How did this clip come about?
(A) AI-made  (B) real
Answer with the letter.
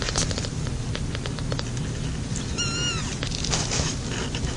B